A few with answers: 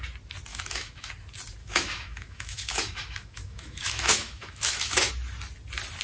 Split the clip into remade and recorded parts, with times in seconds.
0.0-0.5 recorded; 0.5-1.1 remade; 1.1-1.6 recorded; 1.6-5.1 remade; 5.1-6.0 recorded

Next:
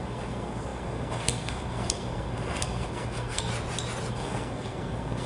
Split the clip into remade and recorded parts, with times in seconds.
0.0-3.5 remade; 3.5-4.1 recorded; 4.1-5.3 remade

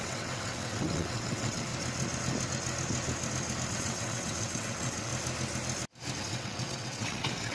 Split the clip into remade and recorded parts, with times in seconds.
0.0-1.7 remade; 1.7-3.7 recorded; 3.7-5.1 remade; 5.1-6.2 recorded; 6.2-7.5 remade

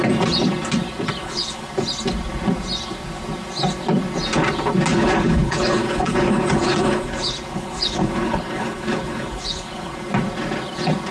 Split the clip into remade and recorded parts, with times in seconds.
0.0-1.2 recorded; 1.2-1.7 remade; 1.7-4.9 recorded; 4.9-10.1 remade; 10.1-11.1 recorded

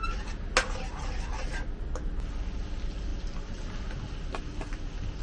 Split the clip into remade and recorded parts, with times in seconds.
0.0-5.2 recorded

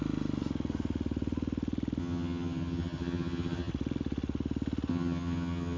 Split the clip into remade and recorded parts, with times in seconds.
0.0-2.0 recorded; 2.0-3.7 remade; 3.7-4.9 recorded; 4.9-5.8 remade

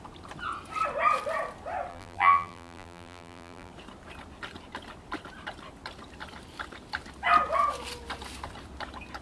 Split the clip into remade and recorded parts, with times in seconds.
0.0-1.9 recorded; 1.9-3.7 remade; 3.7-9.2 recorded

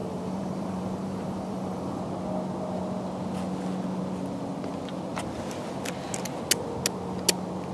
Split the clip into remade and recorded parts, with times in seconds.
0.0-2.0 remade; 2.0-7.7 recorded